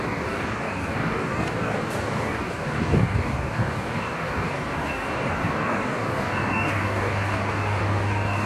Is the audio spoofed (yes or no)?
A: yes